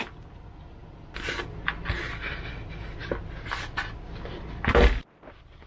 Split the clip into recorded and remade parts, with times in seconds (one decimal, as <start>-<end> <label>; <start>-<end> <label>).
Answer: 0.0-5.7 recorded